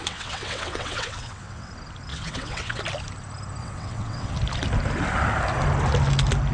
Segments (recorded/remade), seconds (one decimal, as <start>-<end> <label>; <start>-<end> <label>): 0.0-1.7 remade; 1.7-2.1 recorded; 2.1-2.8 remade; 2.8-3.6 recorded; 3.6-4.3 remade; 4.3-6.5 recorded